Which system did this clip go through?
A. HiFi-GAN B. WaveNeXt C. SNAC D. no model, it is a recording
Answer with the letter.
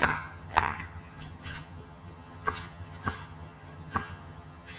A